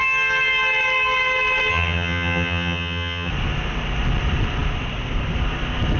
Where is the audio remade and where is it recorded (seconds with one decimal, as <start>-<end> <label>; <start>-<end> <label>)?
0.0-1.7 recorded; 1.7-3.3 remade; 3.3-6.0 recorded